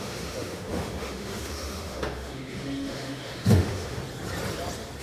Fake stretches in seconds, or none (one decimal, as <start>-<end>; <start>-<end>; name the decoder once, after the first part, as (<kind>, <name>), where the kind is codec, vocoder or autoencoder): 0.0-4.0 (autoencoder, DAC-VAE)